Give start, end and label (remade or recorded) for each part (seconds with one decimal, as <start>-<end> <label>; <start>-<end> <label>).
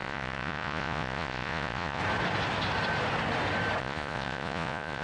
0.0-2.0 remade; 2.0-3.8 recorded; 3.8-5.0 remade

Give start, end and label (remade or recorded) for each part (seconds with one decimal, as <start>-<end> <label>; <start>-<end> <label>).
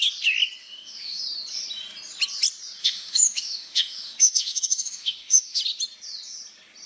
0.0-0.6 recorded; 0.6-1.2 remade; 1.2-2.8 recorded; 2.8-5.6 remade; 5.6-6.9 recorded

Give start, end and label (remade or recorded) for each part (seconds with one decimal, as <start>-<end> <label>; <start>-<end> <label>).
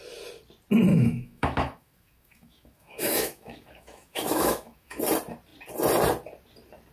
0.0-0.9 recorded; 0.9-5.0 remade; 5.0-6.9 recorded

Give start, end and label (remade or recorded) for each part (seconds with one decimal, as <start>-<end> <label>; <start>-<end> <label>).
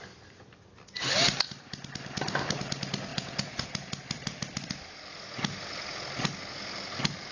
0.0-3.1 recorded; 3.1-3.7 remade; 3.7-7.3 recorded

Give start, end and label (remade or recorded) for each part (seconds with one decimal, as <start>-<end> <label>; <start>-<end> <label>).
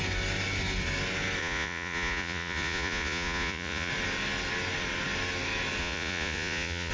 0.0-1.4 recorded; 1.4-3.9 remade; 3.9-5.8 recorded; 5.8-6.9 remade